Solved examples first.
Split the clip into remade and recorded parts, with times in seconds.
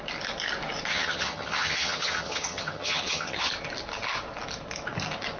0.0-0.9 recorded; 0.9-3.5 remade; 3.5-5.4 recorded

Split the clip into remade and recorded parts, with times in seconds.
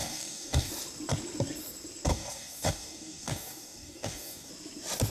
0.0-0.7 remade; 0.7-2.1 recorded; 2.1-4.5 remade; 4.5-5.1 recorded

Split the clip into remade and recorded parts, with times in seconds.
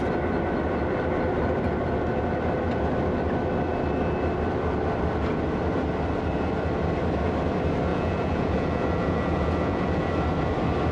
0.0-7.9 recorded; 7.9-10.1 remade; 10.1-10.9 recorded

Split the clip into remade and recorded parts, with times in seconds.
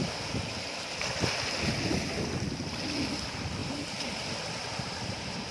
0.0-5.5 recorded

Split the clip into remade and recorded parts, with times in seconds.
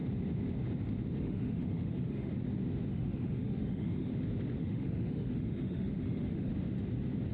0.0-1.2 recorded; 1.2-2.3 remade; 2.3-2.9 recorded; 2.9-4.1 remade; 4.1-4.6 recorded; 4.6-6.5 remade; 6.5-7.3 recorded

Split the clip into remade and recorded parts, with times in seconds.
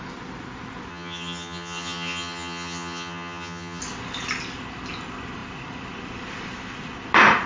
0.0-0.9 recorded; 0.9-3.8 remade; 3.8-7.5 recorded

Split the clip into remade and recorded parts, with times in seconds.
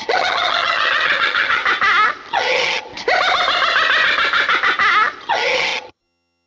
0.0-1.6 remade; 1.6-2.3 recorded; 2.3-2.9 remade; 2.9-5.2 recorded; 5.2-6.5 remade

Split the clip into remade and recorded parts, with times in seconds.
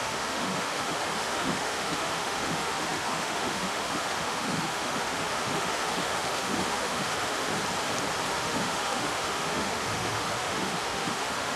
0.0-7.5 remade; 7.5-8.3 recorded; 8.3-11.6 remade